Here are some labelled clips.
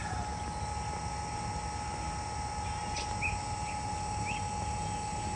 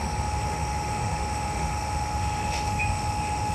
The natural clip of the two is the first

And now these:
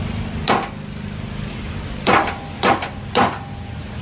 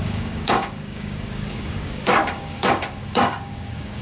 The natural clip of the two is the first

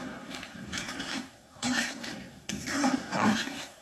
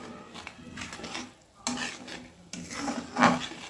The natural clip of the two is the second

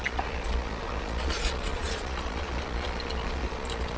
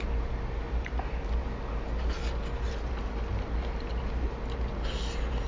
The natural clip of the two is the second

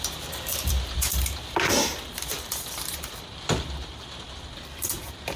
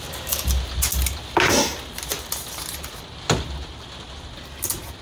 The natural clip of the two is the second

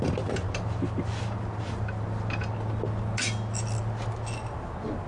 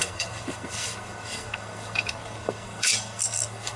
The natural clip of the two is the first